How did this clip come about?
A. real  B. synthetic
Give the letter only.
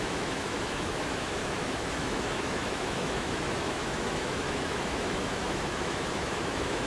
B